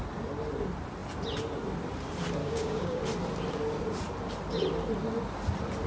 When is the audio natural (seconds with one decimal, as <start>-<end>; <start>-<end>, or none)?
0.0-2.4; 3.0-5.9